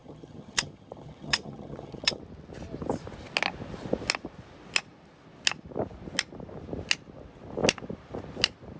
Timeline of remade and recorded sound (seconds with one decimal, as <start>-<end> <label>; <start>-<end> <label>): 0.0-2.2 remade; 2.2-8.8 recorded